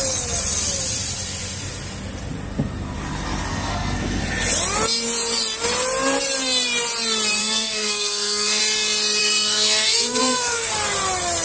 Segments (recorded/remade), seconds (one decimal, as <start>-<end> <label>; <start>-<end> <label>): 0.0-3.5 recorded; 3.5-4.2 remade; 4.2-7.4 recorded; 7.4-8.6 remade; 8.6-9.2 recorded; 9.2-10.7 remade; 10.7-11.4 recorded